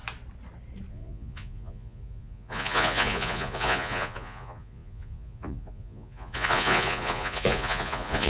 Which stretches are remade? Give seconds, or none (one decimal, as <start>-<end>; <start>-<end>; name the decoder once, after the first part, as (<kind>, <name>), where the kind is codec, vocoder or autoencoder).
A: 0.9-8.3 (vocoder, Vocos)